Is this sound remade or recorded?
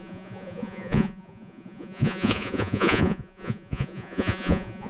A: remade